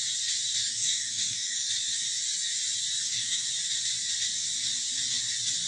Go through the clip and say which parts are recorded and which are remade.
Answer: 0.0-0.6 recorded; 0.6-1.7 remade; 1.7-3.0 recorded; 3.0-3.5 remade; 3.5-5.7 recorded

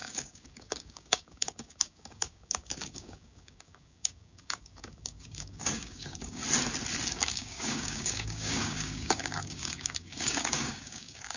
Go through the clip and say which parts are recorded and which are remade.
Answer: 0.0-6.4 remade; 6.4-7.1 recorded; 7.1-11.4 remade

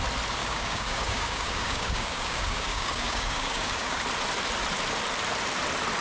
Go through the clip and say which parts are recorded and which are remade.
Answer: 0.0-0.4 recorded; 0.4-4.0 remade; 4.0-6.0 recorded

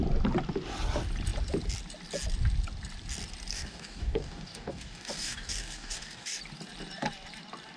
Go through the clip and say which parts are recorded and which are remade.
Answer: 0.0-3.5 recorded; 3.5-6.4 remade; 6.4-7.8 recorded

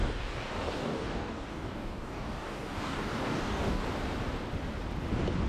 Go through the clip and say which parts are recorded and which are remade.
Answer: 0.0-3.8 remade; 3.8-5.5 recorded

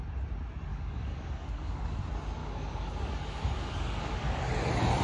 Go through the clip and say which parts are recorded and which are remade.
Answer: 0.0-0.7 recorded; 0.7-2.0 remade; 2.0-2.4 recorded; 2.4-4.5 remade; 4.5-5.0 recorded